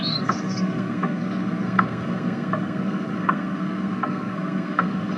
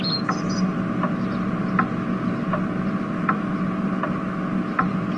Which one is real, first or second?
second